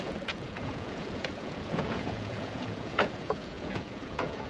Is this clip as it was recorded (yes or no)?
no